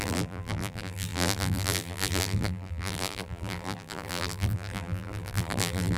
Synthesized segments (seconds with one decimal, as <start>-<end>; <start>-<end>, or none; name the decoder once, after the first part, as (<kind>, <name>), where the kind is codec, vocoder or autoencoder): 0.0-6.0 (vocoder, BigVGAN v2)